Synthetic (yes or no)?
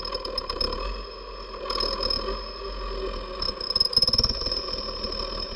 no